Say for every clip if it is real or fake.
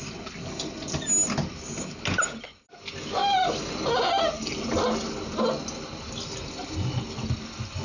real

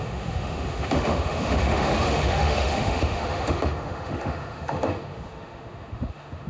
fake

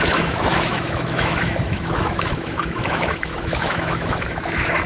fake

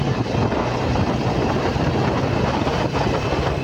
real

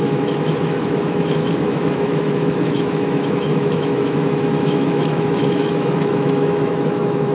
fake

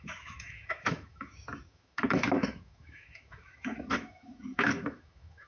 fake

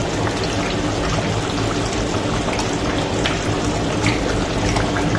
real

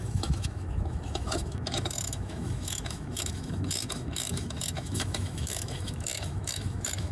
fake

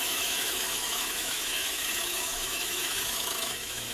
fake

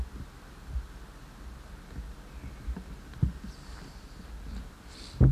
real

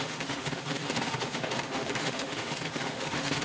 fake